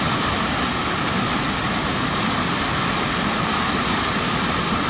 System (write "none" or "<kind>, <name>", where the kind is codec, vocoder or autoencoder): none